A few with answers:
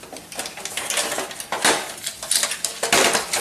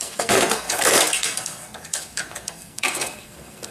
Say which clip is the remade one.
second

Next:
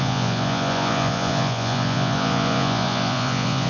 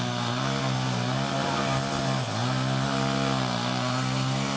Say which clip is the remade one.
first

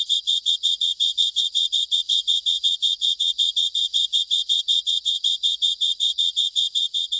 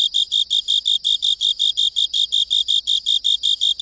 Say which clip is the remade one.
first